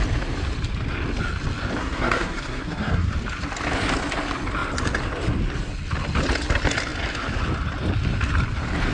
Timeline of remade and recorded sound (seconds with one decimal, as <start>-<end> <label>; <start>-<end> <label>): 0.0-1.8 recorded; 1.8-3.1 remade; 3.1-8.9 recorded